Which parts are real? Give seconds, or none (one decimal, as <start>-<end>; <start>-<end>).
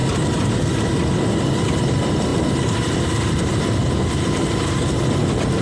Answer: 0.0-5.6